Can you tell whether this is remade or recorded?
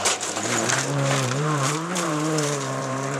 remade